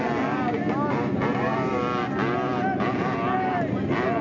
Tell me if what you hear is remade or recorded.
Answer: recorded